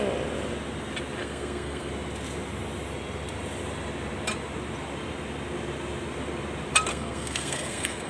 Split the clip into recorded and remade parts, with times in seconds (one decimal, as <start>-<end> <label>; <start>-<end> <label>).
0.0-1.2 recorded; 1.2-1.9 remade; 1.9-6.9 recorded; 6.9-8.1 remade